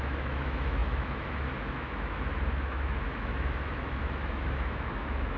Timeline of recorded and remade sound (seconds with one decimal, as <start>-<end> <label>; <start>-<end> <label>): 0.0-5.4 remade